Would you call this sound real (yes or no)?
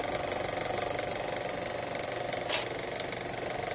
yes